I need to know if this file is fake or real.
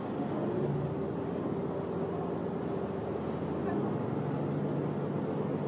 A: real